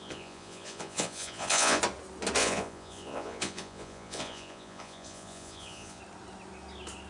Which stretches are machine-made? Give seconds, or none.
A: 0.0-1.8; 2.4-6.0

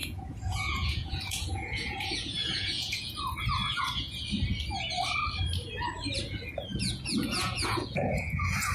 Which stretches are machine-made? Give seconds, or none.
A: 0.0-3.1; 3.6-4.2; 6.7-8.7

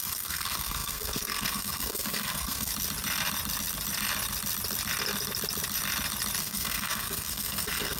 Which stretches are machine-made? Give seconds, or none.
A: 0.0-2.7; 6.4-8.0

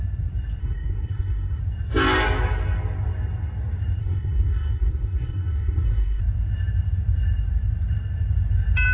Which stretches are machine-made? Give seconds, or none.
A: 0.6-1.6; 4.0-6.2